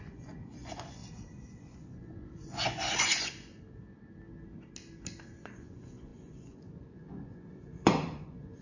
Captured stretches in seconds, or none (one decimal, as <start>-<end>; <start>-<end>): 1.0-1.6; 3.5-5.3